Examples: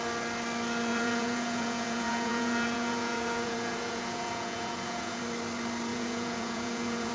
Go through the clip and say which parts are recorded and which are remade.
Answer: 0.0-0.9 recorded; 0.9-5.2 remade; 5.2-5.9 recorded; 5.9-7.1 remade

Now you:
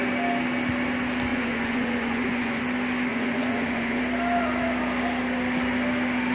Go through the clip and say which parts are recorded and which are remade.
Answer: 0.0-1.3 recorded; 1.3-2.6 remade; 2.6-3.1 recorded; 3.1-4.0 remade; 4.0-6.3 recorded

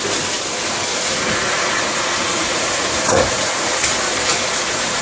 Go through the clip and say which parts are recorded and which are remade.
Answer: 0.0-0.9 recorded; 0.9-3.9 remade; 3.9-4.3 recorded; 4.3-5.0 remade

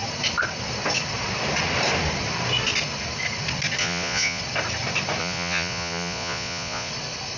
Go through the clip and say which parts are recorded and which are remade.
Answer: 0.0-3.8 recorded; 3.8-4.4 remade; 4.4-5.2 recorded; 5.2-6.9 remade; 6.9-7.4 recorded

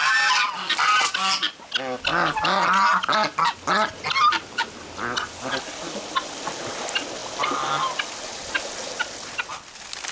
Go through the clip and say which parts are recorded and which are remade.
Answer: 0.0-10.1 recorded

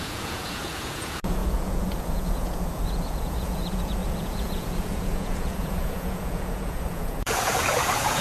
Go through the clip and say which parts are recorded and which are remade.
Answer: 0.0-8.2 remade

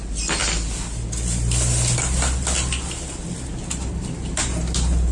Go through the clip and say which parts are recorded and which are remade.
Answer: 0.0-5.1 recorded